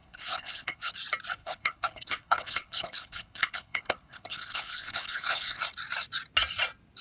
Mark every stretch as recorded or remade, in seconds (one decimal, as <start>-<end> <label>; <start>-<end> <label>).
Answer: 0.0-0.9 remade; 0.9-1.4 recorded; 1.4-5.6 remade; 5.6-7.0 recorded